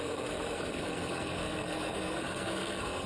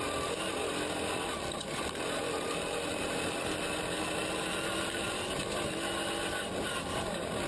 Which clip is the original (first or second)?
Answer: second